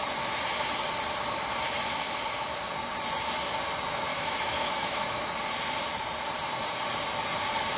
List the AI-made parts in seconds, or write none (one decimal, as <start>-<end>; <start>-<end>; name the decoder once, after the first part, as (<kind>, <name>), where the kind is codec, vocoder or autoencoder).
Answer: 4.1-5.3 (autoencoder, DAC-VAE)